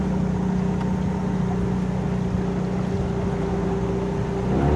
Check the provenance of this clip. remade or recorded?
recorded